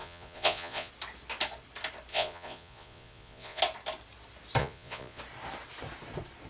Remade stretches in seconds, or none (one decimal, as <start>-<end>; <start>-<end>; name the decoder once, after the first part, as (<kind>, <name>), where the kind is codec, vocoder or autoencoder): 0.0-0.9 (vocoder, Vocos); 2.1-3.6; 4.6-5.2